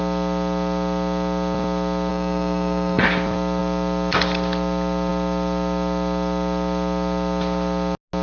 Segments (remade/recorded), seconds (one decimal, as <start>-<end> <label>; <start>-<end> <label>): 0.0-2.1 recorded; 2.1-3.0 remade; 3.0-8.2 recorded